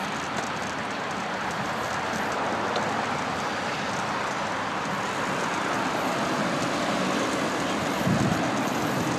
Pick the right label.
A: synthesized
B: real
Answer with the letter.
B